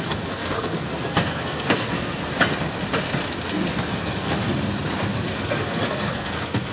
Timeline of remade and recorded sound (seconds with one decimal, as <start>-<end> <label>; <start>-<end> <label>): 0.0-2.2 remade; 2.2-3.7 recorded; 3.7-4.5 remade; 4.5-5.3 recorded; 5.3-6.7 remade